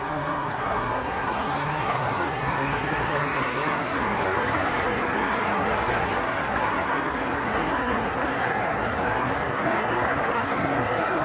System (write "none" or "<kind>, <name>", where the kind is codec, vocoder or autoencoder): codec, SNAC